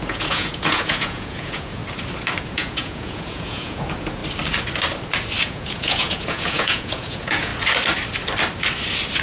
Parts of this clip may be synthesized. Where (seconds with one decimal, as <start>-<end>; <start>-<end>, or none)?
0.0-1.8; 2.4-4.2; 5.4-7.5